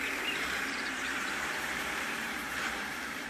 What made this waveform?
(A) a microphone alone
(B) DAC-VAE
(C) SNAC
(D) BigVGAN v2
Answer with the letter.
D